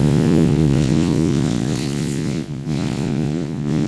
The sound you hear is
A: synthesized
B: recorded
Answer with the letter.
A